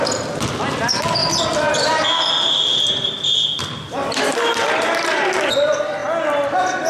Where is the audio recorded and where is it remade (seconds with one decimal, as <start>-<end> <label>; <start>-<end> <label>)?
0.0-1.2 recorded; 1.2-2.0 remade; 2.0-2.7 recorded; 2.7-5.4 remade; 5.4-6.9 recorded